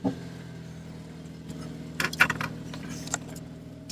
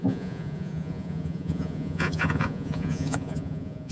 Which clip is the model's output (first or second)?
second